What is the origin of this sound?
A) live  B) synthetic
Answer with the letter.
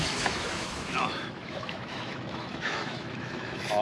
B